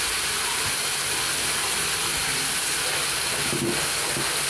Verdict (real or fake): real